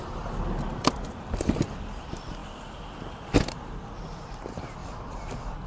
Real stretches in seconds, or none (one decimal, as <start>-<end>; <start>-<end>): 2.4-3.7; 4.8-5.7